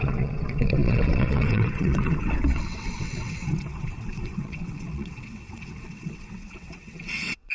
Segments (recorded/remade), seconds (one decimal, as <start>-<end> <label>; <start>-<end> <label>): 0.0-7.5 remade